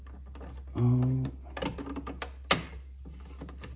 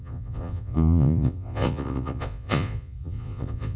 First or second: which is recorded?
first